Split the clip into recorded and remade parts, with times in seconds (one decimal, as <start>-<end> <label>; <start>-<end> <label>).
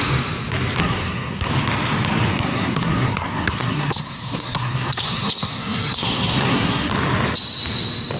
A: 0.0-0.8 recorded; 0.8-1.5 remade; 1.5-2.3 recorded; 2.3-6.9 remade; 6.9-8.2 recorded